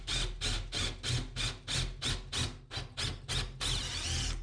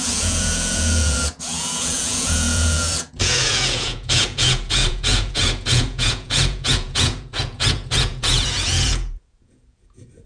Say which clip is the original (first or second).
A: first